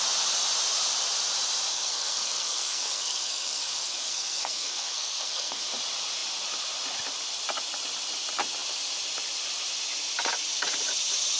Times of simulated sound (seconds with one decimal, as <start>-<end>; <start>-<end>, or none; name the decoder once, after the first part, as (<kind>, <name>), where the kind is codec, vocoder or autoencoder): 1.7-5.7 (codec, SNAC)